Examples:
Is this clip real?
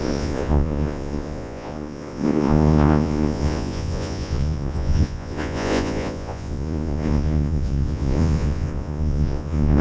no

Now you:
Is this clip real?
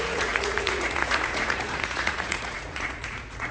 no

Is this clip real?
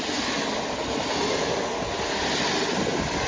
yes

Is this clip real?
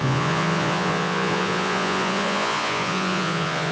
no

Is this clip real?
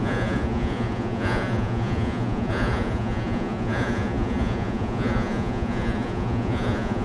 no